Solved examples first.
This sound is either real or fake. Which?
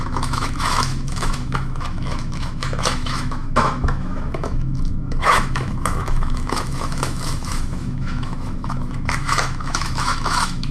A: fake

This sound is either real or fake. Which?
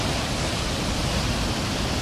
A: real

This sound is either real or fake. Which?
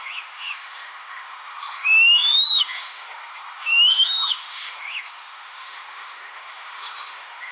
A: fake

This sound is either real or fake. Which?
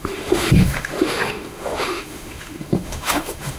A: fake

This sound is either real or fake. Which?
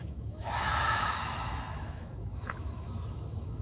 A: fake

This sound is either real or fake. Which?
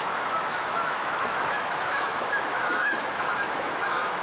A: fake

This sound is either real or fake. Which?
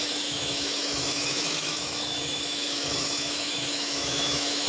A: fake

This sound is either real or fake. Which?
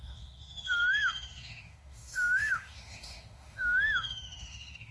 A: fake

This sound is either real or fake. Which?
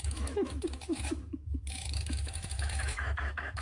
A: fake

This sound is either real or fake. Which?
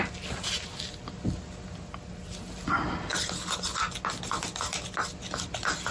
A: real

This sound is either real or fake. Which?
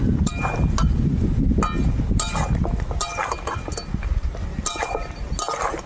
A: real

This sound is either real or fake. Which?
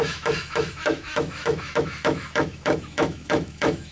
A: fake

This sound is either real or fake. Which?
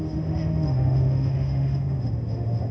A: fake